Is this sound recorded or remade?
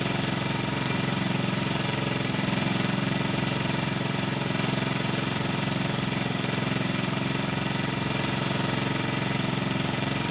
remade